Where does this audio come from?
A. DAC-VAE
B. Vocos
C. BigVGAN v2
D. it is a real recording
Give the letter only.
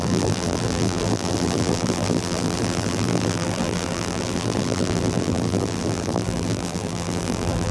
C